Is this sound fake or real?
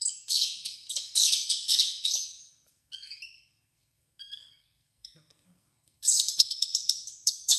fake